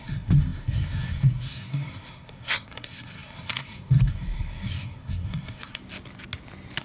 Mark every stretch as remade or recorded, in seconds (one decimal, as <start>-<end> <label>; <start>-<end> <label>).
0.0-5.8 remade; 5.8-6.8 recorded